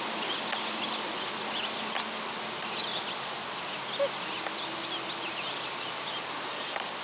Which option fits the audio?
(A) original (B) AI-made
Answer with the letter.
A